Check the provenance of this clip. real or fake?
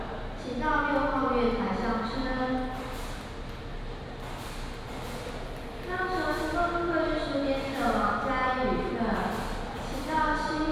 real